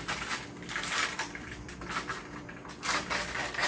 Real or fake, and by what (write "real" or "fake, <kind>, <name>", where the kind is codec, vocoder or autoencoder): fake, vocoder, BigVGAN v2